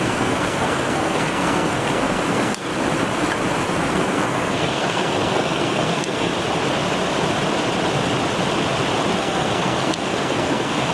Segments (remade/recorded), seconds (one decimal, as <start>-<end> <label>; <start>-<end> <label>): 0.0-2.7 remade; 2.7-3.7 recorded; 3.7-6.3 remade; 6.3-9.2 recorded; 9.2-10.9 remade